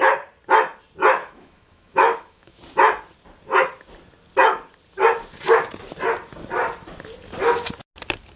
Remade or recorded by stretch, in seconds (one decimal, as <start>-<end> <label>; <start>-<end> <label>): 0.0-1.2 recorded; 1.2-2.6 remade; 2.6-8.4 recorded